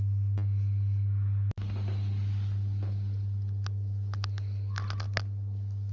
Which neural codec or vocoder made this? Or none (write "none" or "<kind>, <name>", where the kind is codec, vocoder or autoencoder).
none